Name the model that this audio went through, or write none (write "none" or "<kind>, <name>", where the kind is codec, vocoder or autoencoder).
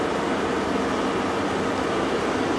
none